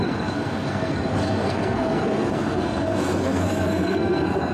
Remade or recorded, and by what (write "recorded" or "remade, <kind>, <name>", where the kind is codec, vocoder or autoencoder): remade, codec, SNAC